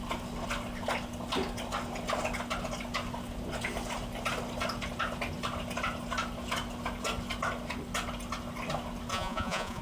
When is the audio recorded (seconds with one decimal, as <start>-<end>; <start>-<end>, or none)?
0.0-9.1